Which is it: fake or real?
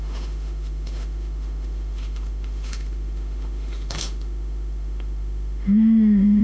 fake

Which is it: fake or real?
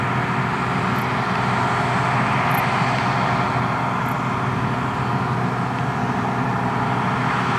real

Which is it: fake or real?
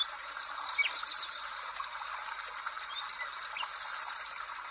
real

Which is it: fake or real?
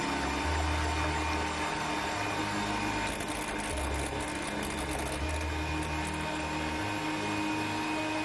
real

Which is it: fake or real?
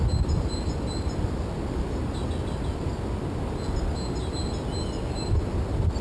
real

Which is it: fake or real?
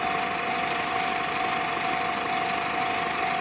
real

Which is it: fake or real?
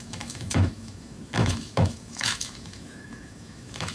fake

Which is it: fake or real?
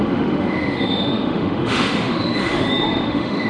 fake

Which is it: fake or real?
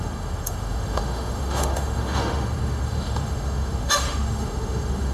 fake